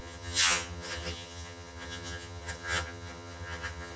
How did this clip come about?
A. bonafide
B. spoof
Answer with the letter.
B